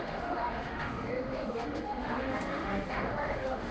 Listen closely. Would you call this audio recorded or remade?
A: remade